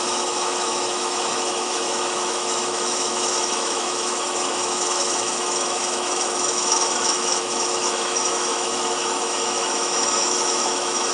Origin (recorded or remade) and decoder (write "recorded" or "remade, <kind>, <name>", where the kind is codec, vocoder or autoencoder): remade, autoencoder, DAC-VAE